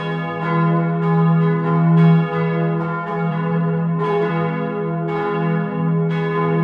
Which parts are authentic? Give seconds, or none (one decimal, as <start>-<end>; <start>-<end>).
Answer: 0.0-3.1; 4.3-6.6